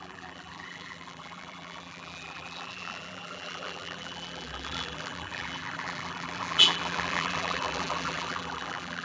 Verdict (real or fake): fake